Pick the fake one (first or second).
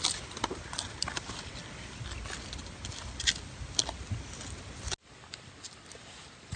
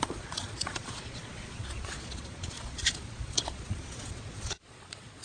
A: second